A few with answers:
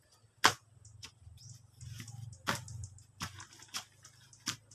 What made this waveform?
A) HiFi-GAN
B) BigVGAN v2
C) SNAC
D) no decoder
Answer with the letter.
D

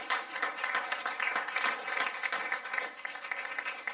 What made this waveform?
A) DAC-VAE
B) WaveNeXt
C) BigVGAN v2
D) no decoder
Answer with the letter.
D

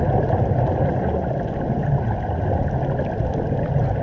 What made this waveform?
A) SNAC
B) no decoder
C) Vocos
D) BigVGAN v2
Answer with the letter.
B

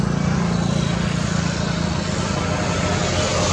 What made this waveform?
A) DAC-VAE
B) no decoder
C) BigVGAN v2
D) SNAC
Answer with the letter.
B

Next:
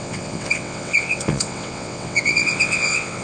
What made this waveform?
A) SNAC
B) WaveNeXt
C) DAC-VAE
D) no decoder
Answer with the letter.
B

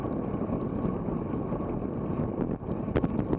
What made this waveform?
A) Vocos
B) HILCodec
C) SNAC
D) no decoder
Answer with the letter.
D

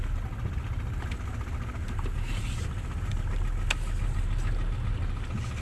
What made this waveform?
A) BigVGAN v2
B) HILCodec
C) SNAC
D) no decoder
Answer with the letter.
D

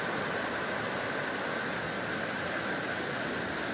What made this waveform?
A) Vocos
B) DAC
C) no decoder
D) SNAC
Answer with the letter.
C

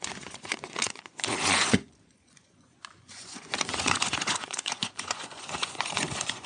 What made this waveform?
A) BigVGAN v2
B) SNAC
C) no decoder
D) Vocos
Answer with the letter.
D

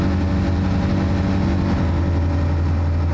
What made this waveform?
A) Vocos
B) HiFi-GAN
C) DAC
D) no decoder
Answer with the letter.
D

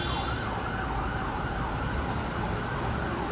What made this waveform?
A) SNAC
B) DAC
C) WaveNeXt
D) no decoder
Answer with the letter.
D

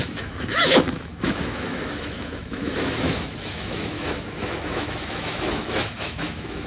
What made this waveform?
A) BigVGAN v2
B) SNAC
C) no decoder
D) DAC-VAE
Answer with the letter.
D